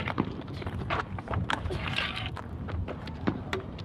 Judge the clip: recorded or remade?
remade